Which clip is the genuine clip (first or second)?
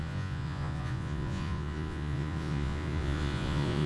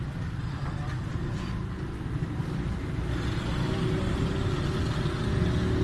second